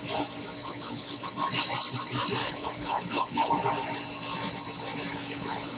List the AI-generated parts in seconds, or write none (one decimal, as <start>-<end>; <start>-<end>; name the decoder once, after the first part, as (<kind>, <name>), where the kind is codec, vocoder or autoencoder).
0.6-1.3 (codec, HILCodec); 2.4-3.5; 5.1-5.8